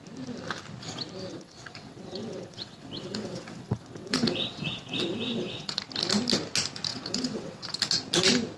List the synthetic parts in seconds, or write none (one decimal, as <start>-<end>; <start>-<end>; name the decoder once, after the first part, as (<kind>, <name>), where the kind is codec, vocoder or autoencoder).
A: 1.3-5.8 (vocoder, WaveNeXt); 6.9-7.8